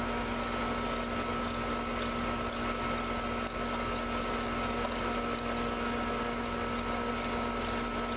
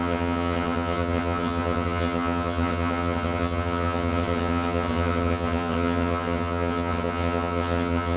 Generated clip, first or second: second